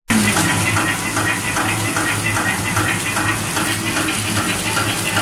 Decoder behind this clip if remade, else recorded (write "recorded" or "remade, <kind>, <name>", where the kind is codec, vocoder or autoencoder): recorded